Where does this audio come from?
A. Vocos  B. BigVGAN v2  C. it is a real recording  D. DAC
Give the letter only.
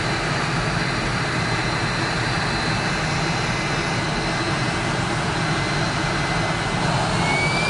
C